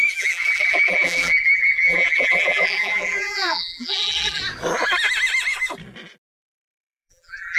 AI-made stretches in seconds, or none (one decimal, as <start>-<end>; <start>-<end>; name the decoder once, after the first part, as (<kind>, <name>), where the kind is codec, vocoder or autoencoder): 0.0-4.4 (vocoder, BigVGAN v2); 6.4-7.6